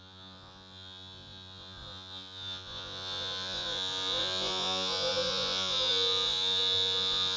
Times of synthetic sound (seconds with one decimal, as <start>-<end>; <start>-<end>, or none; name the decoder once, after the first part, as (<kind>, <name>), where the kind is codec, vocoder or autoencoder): 0.0-7.4 (vocoder, Vocos)